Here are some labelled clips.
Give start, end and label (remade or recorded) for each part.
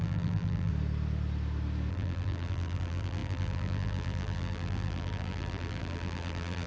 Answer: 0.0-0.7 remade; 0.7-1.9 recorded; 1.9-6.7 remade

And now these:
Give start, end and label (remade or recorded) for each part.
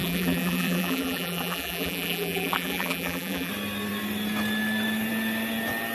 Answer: 0.0-3.5 remade; 3.5-5.9 recorded